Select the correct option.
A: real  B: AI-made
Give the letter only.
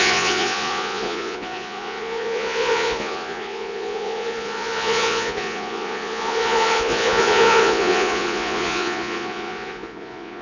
B